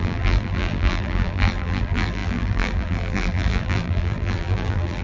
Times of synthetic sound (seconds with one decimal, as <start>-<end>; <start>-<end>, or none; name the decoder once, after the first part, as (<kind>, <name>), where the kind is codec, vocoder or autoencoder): 0.0-5.0 (vocoder, BigVGAN v2)